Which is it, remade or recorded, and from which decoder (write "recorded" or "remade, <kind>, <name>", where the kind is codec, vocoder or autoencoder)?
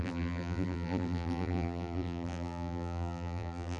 remade, vocoder, BigVGAN v2